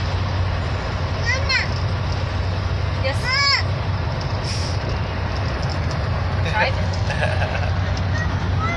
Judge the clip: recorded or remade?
recorded